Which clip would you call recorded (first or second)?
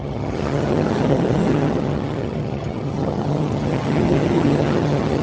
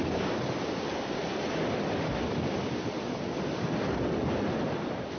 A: second